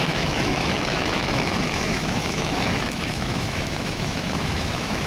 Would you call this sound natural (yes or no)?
no